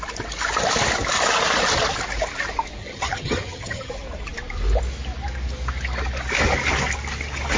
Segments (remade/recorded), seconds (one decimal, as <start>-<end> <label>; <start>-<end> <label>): 0.0-2.8 recorded; 2.8-3.9 remade; 3.9-7.6 recorded